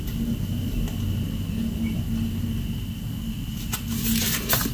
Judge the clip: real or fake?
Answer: real